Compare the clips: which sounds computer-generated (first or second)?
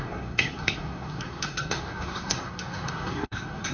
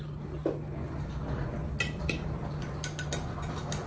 first